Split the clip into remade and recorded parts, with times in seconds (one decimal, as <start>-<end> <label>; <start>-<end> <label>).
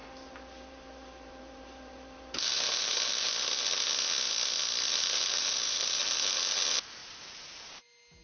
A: 0.0-3.3 remade; 3.3-5.3 recorded; 5.3-6.0 remade; 6.0-7.0 recorded; 7.0-7.7 remade; 7.7-8.2 recorded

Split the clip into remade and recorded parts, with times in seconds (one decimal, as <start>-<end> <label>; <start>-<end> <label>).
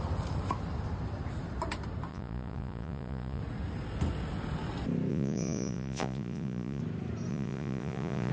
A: 0.0-2.1 recorded; 2.1-3.4 remade; 3.4-5.1 recorded; 5.1-6.8 remade; 6.8-7.3 recorded; 7.3-8.3 remade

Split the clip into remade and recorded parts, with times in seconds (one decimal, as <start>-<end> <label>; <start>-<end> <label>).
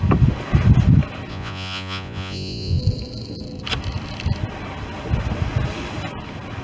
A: 0.0-1.3 recorded; 1.3-2.8 remade; 2.8-6.6 recorded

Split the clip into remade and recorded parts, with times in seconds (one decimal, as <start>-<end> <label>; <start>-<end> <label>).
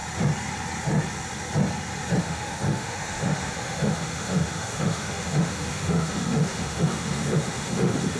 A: 0.0-2.2 recorded; 2.2-8.2 remade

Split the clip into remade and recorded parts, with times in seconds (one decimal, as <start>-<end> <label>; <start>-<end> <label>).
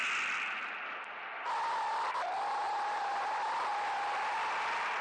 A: 0.0-5.0 recorded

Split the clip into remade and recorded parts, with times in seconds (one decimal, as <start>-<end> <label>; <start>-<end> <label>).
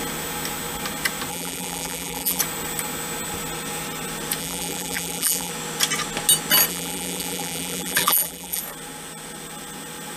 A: 0.0-1.3 recorded; 1.3-2.4 remade; 2.4-4.4 recorded; 4.4-5.5 remade; 5.5-6.7 recorded; 6.7-8.6 remade; 8.6-10.2 recorded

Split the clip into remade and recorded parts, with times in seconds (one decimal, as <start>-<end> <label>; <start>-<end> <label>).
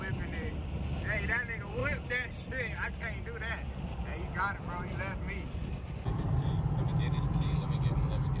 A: 0.0-1.8 remade; 1.8-5.5 recorded; 5.5-8.4 remade